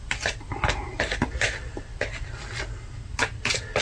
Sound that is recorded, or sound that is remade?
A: recorded